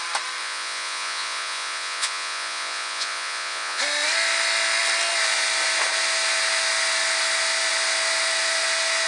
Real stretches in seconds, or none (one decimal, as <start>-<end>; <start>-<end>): 0.0-0.4; 3.8-9.1